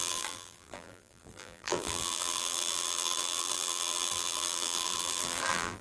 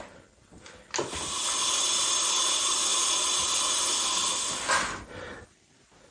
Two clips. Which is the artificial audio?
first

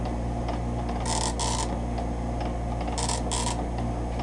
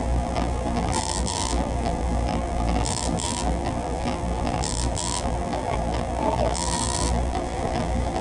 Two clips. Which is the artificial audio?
second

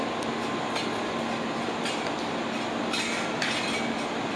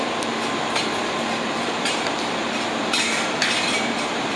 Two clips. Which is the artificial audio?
second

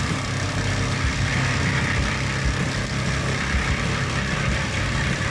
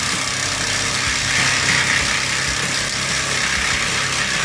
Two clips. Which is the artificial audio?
first